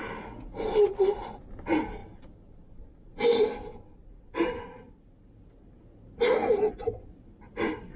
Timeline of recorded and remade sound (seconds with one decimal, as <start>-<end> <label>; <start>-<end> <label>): 0.0-8.0 recorded

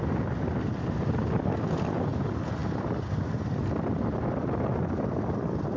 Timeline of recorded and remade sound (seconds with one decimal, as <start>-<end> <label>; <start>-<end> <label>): 0.0-2.6 recorded; 2.6-4.3 remade; 4.3-5.8 recorded

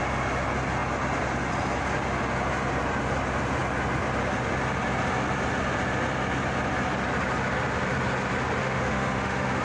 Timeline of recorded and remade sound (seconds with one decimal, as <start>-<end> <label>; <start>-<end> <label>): 0.0-8.6 recorded; 8.6-9.6 remade

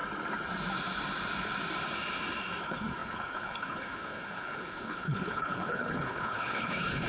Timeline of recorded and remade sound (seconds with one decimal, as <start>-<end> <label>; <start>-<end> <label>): 0.0-2.6 recorded; 2.6-7.1 remade

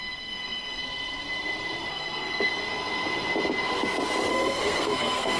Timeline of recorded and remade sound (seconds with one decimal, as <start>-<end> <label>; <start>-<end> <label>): 0.0-0.8 remade; 0.8-1.9 recorded; 1.9-2.5 remade; 2.5-4.3 recorded; 4.3-5.4 remade

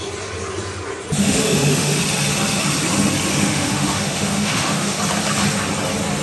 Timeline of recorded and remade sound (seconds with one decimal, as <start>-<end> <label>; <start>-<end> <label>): 0.0-1.2 recorded; 1.2-2.0 remade; 2.0-3.3 recorded; 3.3-5.0 remade; 5.0-6.2 recorded

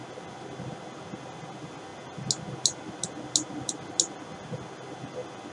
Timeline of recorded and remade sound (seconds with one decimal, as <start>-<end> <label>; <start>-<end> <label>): 0.0-5.5 recorded

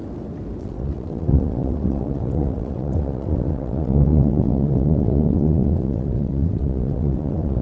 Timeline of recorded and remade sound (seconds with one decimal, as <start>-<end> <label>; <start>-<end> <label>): 0.0-0.6 recorded; 0.6-7.6 remade